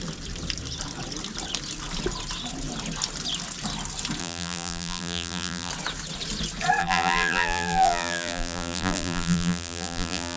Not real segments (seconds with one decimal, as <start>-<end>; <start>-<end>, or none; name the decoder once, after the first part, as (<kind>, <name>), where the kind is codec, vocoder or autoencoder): 4.2-5.7 (vocoder, BigVGAN v2); 6.8-10.4